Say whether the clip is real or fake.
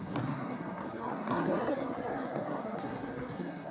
fake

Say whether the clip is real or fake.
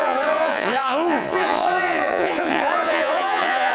fake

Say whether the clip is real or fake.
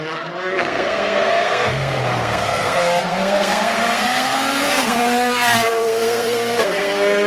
fake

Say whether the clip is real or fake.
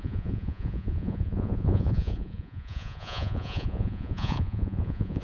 fake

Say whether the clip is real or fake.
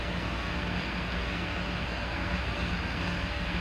fake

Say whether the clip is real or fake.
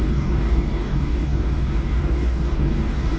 fake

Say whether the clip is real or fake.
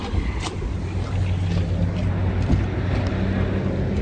real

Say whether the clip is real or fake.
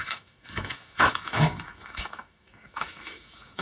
fake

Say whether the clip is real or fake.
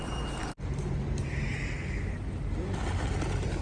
real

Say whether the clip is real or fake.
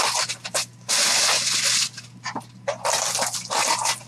real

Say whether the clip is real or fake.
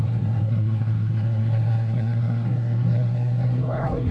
fake